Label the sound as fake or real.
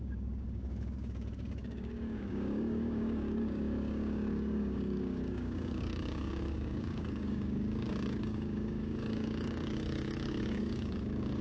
fake